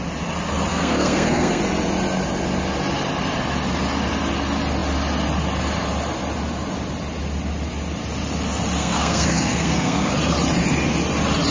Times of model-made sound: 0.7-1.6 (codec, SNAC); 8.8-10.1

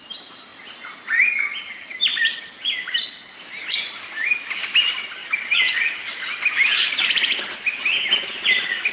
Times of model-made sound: none

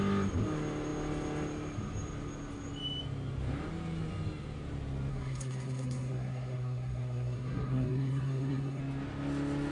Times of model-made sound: 5.1-8.8 (codec, SNAC)

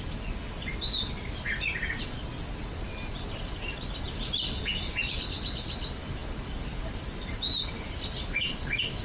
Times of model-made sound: none